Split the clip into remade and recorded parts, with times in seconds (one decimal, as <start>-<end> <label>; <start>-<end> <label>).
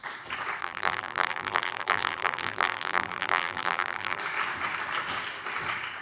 0.0-0.6 recorded; 0.6-4.2 remade; 4.2-6.0 recorded